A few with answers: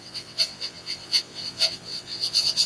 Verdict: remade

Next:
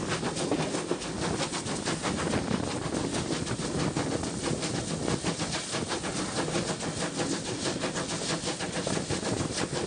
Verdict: recorded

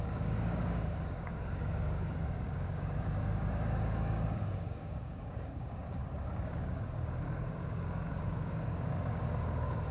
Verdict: remade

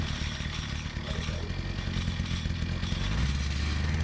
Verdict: recorded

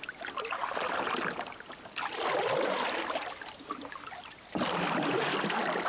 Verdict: recorded